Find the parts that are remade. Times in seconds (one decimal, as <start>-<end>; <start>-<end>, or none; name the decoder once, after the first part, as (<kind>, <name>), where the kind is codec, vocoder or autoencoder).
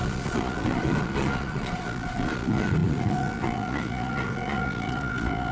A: 0.0-5.5 (vocoder, Vocos)